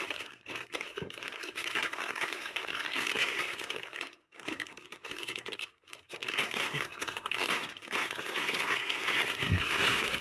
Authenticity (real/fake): fake